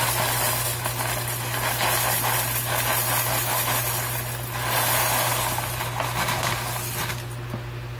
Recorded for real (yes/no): yes